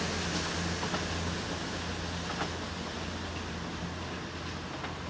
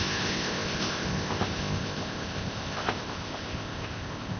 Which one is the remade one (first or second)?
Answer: second